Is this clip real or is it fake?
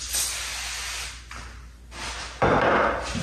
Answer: real